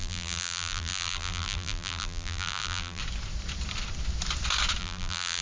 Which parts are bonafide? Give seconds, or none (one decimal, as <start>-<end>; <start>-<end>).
3.0-4.8